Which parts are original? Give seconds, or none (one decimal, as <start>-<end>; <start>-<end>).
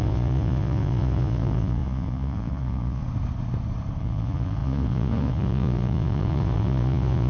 3.0-4.0